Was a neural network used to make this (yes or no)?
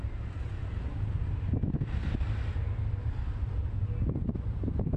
no